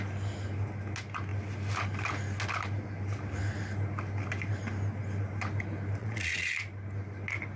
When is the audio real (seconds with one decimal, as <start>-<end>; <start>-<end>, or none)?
0.0-6.0; 6.5-7.6